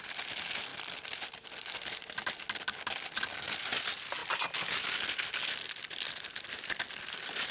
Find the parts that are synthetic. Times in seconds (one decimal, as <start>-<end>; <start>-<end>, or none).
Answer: 0.7-2.4; 4.2-5.0